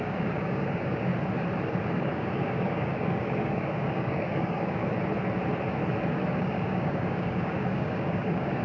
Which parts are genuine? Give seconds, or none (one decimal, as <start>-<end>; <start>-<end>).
1.1-1.9; 4.8-6.4